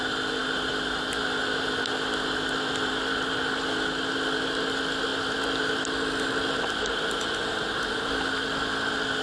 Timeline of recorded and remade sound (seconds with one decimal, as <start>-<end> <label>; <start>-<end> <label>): 0.0-9.2 recorded